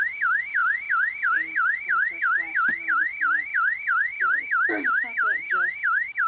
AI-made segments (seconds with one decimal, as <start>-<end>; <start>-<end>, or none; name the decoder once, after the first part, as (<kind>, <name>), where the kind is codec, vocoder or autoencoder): 0.0-0.6 (autoencoder, DAC-VAE); 4.4-6.3